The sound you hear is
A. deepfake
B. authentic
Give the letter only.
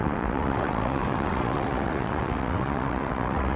A